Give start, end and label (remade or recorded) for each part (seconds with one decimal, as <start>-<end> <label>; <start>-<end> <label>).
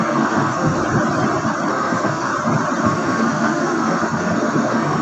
0.0-0.8 remade; 0.8-1.7 recorded; 1.7-2.3 remade; 2.3-2.8 recorded; 2.8-5.0 remade